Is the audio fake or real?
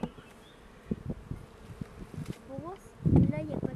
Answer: real